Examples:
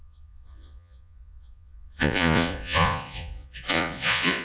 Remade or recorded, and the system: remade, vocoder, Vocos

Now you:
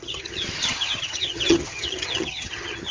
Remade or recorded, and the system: remade, vocoder, HiFi-GAN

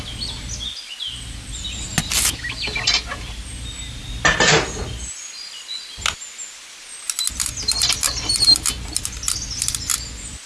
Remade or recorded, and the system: recorded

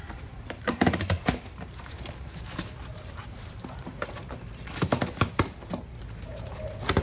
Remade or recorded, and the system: remade, vocoder, BigVGAN v2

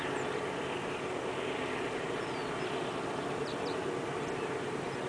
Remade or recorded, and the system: recorded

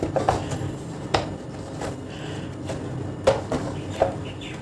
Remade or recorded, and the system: recorded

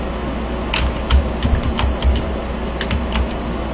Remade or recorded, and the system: recorded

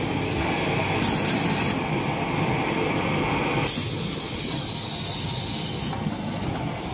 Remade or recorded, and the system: recorded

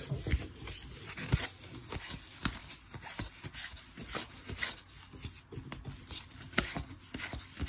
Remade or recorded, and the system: recorded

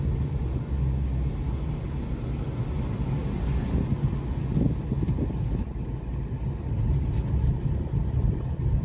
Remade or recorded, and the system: recorded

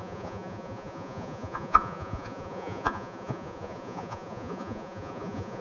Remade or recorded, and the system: remade, vocoder, Vocos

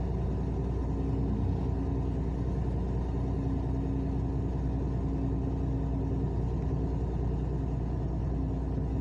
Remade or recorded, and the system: recorded